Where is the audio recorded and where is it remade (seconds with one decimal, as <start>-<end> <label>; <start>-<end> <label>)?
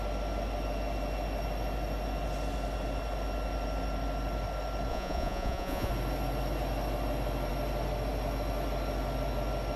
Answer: 0.0-4.9 recorded; 4.9-5.9 remade; 5.9-9.8 recorded